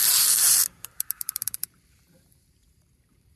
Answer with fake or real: fake